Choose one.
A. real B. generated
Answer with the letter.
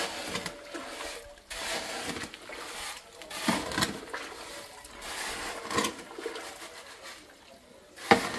A